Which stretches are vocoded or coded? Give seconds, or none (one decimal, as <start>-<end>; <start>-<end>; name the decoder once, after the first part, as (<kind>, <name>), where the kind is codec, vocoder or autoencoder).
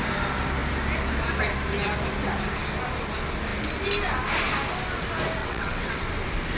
5.4-6.0 (vocoder, WaveNeXt)